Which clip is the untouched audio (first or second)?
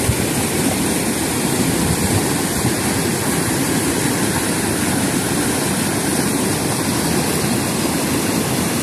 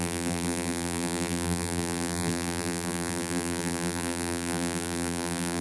first